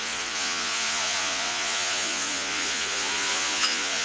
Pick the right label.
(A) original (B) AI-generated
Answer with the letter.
B